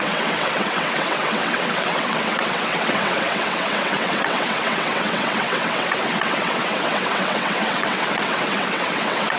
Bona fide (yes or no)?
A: no